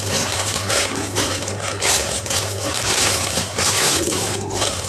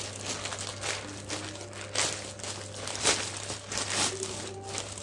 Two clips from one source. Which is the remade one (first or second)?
first